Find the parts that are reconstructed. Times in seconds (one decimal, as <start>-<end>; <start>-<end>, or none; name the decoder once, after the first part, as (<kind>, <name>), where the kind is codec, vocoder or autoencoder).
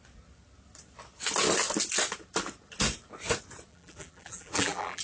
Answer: 3.7-5.0 (vocoder, BigVGAN v2)